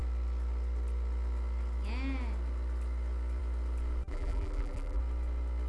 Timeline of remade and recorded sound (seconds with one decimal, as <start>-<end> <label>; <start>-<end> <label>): 0.0-4.1 recorded; 4.1-5.0 remade; 5.0-5.7 recorded